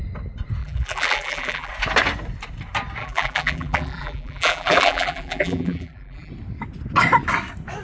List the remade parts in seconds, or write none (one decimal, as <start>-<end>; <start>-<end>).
0.6-1.7; 3.0-6.3